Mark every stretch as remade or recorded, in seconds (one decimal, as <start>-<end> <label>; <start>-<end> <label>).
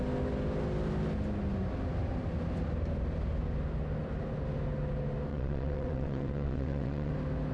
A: 0.0-5.3 recorded; 5.3-7.1 remade; 7.1-7.5 recorded